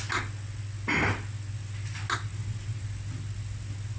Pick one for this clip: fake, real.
real